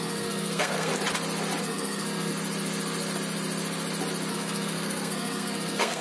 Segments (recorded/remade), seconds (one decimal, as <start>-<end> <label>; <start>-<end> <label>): 0.0-0.9 remade; 0.9-1.6 recorded; 1.6-2.3 remade; 2.3-4.3 recorded; 4.3-6.0 remade